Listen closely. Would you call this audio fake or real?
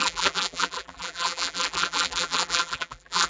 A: fake